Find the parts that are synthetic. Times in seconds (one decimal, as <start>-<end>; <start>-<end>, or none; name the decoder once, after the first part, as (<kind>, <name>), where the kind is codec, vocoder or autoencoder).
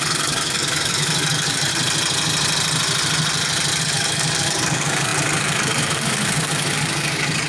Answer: 0.0-1.7 (codec, DAC); 3.8-7.5